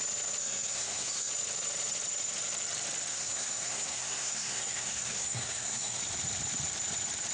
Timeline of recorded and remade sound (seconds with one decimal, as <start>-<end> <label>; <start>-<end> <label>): 0.0-0.4 recorded; 0.4-1.3 remade; 1.3-3.1 recorded; 3.1-6.0 remade; 6.0-7.3 recorded